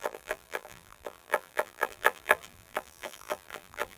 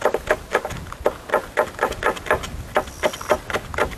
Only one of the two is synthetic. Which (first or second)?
first